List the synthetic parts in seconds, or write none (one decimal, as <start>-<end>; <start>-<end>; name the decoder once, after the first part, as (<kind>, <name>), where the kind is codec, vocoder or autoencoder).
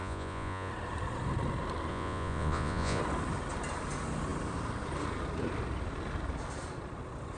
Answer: 0.0-0.7 (vocoder, Vocos); 1.9-3.0